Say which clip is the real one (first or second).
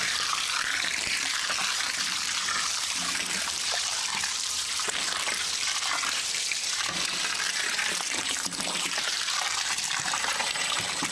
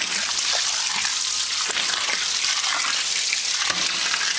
second